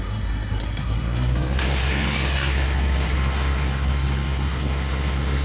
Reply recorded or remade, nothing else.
remade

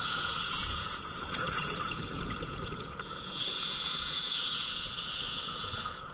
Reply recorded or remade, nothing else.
remade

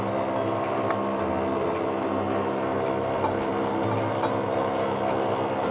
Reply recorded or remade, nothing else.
recorded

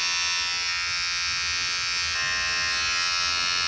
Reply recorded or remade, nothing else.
recorded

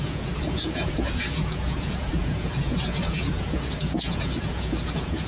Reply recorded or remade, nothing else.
remade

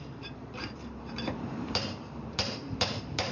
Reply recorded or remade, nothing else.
remade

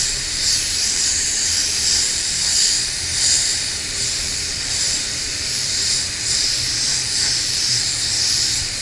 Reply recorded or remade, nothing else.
remade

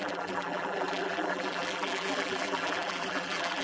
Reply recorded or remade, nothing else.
remade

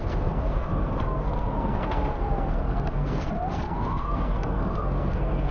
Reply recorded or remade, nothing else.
remade